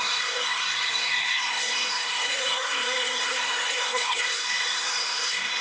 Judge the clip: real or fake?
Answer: fake